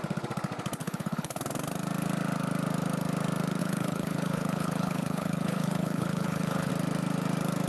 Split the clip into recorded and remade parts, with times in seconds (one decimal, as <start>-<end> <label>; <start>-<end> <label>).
0.0-0.8 recorded; 0.8-1.4 remade; 1.4-3.6 recorded; 3.6-6.7 remade; 6.7-7.7 recorded